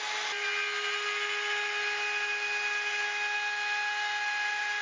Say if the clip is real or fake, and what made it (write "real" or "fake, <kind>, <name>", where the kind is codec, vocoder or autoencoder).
real